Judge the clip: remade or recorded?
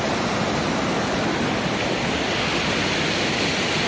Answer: recorded